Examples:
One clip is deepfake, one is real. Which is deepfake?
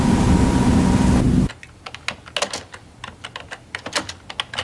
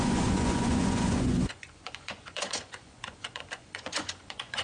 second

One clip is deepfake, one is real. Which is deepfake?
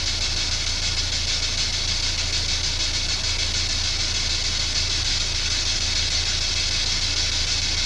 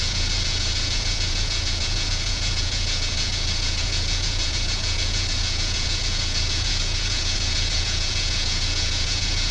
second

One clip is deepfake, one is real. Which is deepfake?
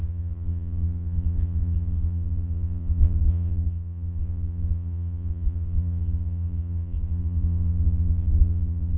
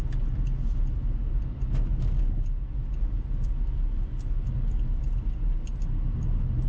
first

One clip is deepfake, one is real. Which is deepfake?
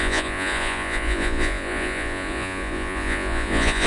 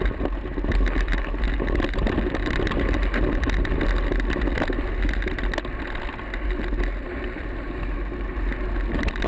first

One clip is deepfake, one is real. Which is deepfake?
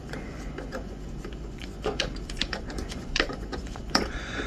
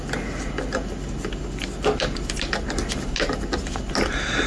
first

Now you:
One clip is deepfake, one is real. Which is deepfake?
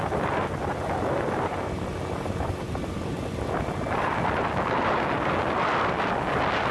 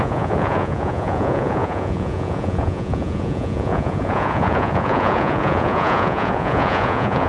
second